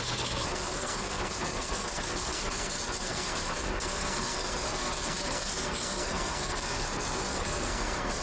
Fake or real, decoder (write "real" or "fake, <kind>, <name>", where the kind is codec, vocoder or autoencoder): fake, codec, SNAC